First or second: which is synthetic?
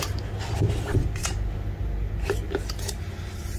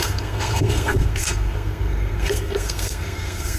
second